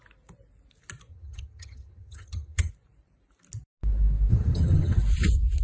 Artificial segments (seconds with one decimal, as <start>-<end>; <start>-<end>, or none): 1.1-2.7; 4.3-5.0